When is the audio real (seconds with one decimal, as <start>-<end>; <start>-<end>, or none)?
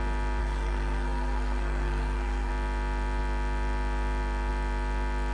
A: 0.0-0.4; 2.5-5.3